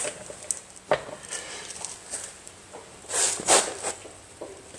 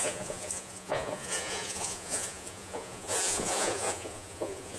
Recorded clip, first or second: first